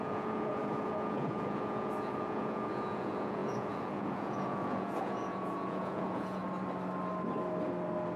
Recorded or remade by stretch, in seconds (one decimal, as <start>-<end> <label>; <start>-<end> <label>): 0.0-6.4 remade; 6.4-8.2 recorded

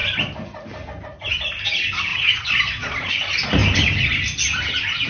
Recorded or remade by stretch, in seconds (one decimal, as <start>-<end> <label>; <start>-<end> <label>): 0.0-2.1 recorded; 2.1-3.1 remade; 3.1-5.1 recorded

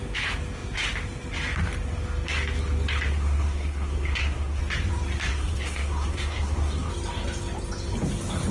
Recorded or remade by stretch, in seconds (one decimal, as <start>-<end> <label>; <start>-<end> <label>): 0.0-3.1 recorded; 3.1-4.6 remade; 4.6-5.3 recorded; 5.3-6.9 remade; 6.9-8.5 recorded

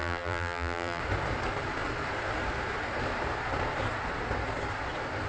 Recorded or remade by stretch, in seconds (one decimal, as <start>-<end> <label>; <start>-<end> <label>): 0.0-1.0 remade; 1.0-5.3 recorded